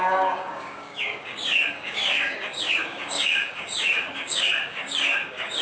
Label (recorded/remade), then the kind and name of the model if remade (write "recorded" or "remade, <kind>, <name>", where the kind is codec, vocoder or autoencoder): remade, codec, DAC